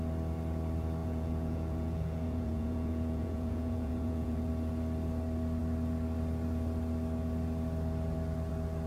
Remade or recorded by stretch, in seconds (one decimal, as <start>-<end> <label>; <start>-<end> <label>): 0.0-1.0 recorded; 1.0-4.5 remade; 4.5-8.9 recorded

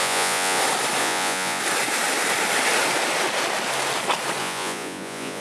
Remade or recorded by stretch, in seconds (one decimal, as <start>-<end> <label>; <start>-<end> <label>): 0.0-0.6 remade; 0.6-1.0 recorded; 1.0-1.6 remade; 1.6-4.4 recorded; 4.4-5.4 remade

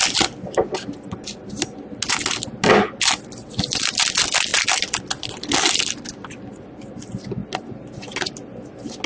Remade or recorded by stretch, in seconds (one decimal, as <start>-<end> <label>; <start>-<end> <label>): 0.0-9.1 recorded